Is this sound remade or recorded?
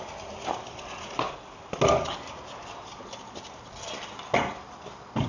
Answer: recorded